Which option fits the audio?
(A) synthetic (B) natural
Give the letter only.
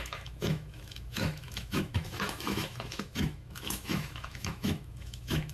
A